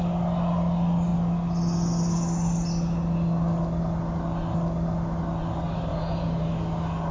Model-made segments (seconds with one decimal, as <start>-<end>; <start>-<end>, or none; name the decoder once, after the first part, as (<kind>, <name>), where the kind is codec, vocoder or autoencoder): 5.9-6.4 (vocoder, Vocos)